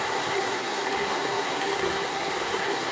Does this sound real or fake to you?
fake